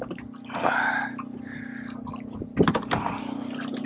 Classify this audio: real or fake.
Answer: real